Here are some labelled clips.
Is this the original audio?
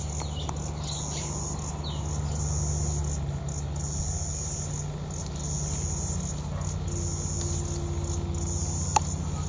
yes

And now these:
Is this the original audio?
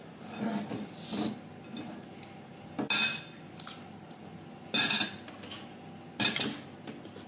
yes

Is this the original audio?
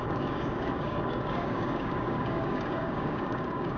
no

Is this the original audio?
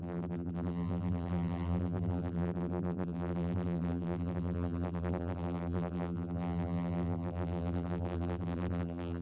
no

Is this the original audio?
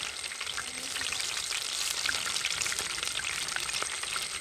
yes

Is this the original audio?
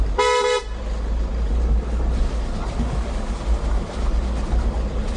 yes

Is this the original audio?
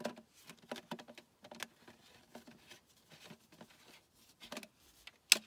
yes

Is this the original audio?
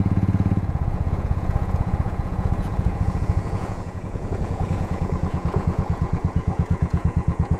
no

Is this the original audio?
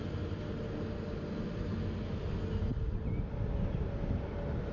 yes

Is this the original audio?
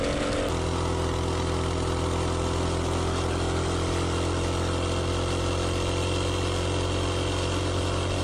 yes